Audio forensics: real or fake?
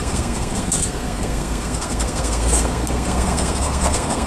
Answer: fake